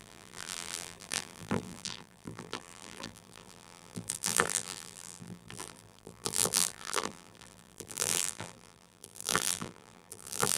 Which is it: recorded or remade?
remade